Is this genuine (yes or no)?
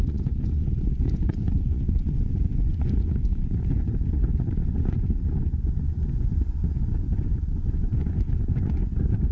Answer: no